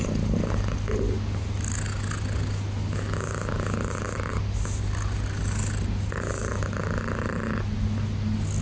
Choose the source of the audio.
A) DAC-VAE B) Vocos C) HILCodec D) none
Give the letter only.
D